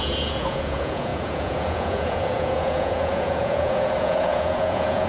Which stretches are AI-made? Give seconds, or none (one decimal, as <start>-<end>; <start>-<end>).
0.0-5.1